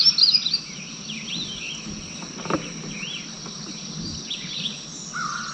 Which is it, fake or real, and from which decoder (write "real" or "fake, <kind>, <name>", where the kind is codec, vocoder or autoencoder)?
real